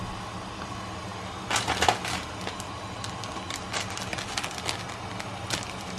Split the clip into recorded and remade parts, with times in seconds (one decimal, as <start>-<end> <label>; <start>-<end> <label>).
0.0-6.0 recorded